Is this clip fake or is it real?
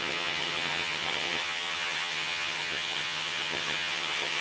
fake